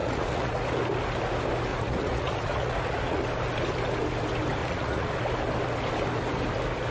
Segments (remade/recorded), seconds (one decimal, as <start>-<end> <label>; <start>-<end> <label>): 0.0-0.5 remade; 0.5-1.7 recorded; 1.7-3.2 remade; 3.2-4.6 recorded; 4.6-5.1 remade; 5.1-6.9 recorded